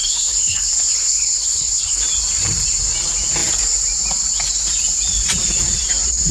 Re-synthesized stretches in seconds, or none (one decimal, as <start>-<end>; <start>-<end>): 0.0-2.0